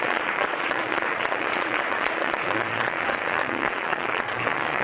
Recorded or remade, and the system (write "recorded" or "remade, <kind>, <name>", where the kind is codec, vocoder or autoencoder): remade, vocoder, Vocos